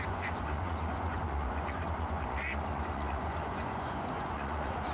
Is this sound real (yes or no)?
no